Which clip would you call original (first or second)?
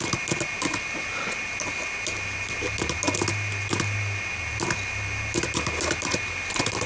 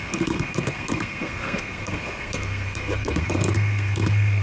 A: first